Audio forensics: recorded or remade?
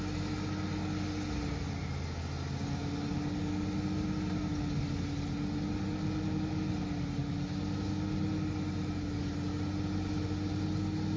recorded